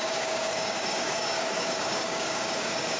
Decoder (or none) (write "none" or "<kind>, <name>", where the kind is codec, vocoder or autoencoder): codec, DAC